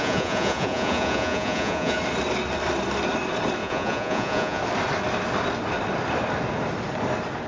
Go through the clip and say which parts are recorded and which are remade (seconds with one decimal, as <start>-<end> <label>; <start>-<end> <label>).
0.0-2.0 remade; 2.0-3.6 recorded; 3.6-4.6 remade; 4.6-7.5 recorded